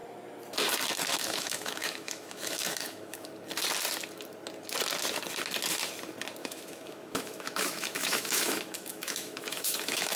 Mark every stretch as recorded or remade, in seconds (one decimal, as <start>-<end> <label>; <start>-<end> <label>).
0.0-1.1 recorded; 1.1-3.3 remade; 3.3-6.4 recorded; 6.4-10.2 remade